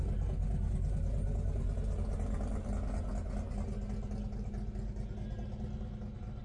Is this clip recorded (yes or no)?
yes